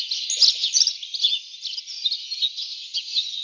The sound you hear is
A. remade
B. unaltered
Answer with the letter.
B